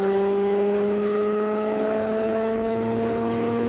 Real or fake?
fake